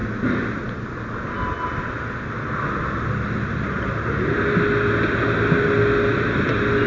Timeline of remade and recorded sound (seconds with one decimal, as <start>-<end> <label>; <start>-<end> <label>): 0.0-6.9 recorded